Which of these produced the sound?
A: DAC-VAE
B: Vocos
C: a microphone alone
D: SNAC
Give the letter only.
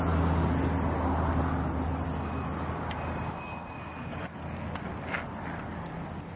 C